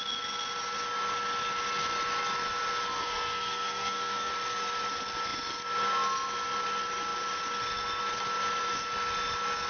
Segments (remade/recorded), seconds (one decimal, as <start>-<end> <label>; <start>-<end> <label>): 0.0-3.0 recorded; 3.0-4.3 remade; 4.3-9.7 recorded